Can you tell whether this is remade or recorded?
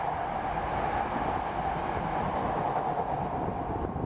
recorded